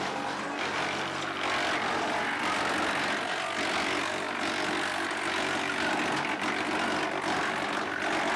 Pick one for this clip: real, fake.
real